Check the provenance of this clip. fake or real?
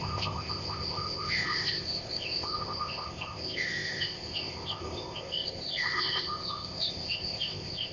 fake